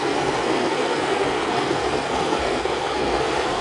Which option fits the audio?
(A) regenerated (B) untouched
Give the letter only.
A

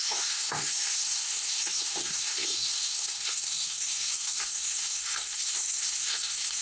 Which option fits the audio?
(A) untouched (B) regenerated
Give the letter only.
B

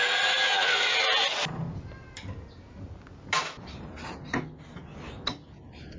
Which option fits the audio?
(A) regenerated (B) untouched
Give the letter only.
B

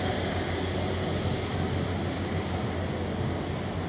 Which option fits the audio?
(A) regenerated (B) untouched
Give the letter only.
B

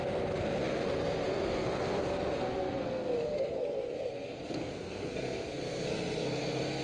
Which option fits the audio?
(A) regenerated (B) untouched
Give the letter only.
A